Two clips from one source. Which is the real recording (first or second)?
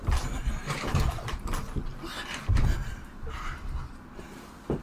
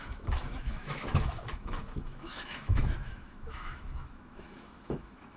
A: first